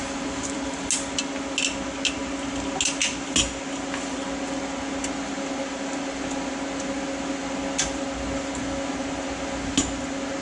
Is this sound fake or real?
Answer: real